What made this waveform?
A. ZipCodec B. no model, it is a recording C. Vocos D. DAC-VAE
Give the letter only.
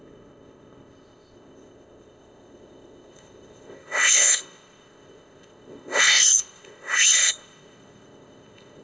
A